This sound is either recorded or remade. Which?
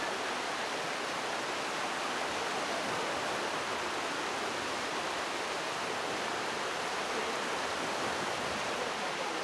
recorded